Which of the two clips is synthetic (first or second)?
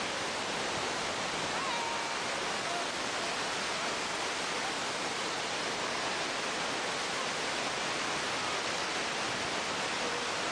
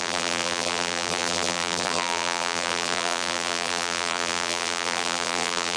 second